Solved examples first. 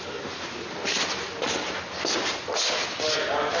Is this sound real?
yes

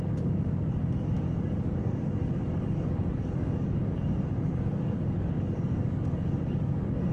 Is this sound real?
no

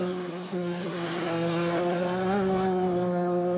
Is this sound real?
no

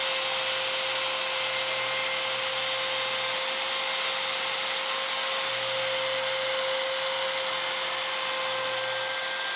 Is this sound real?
yes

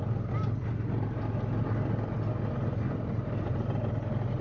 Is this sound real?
yes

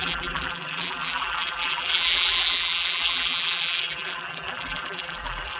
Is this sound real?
no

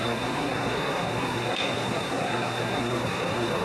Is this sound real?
no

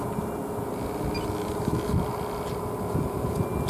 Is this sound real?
yes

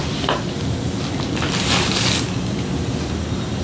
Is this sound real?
yes